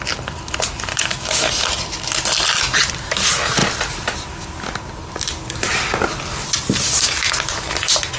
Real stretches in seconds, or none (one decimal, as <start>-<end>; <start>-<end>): 0.0-0.9; 1.5-8.2